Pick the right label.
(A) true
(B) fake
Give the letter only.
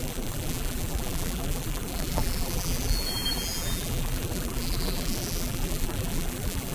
B